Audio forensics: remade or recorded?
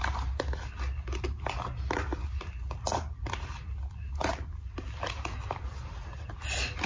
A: recorded